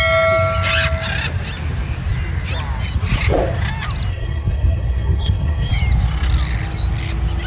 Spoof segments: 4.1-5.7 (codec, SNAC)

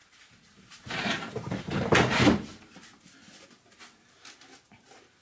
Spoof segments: 0.0-3.1 (vocoder, BigVGAN v2)

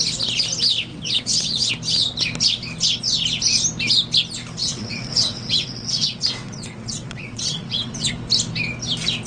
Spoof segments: 0.9-1.7 (vocoder, WaveNeXt); 4.6-8.1

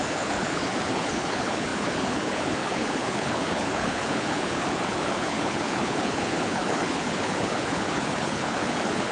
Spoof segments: 0.0-9.1 (codec, HILCodec)

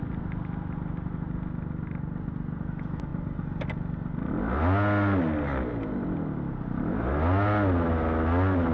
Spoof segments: none

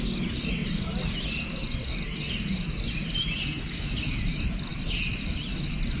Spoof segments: none

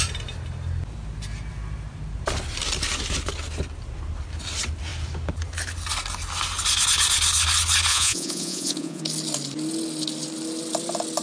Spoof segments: 7.9-9.0 (vocoder, Vocos)